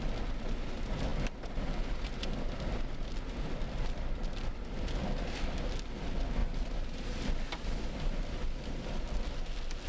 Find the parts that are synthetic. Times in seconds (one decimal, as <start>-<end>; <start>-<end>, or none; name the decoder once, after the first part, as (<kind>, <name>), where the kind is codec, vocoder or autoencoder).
6.4-7.2 (vocoder, BigVGAN v2)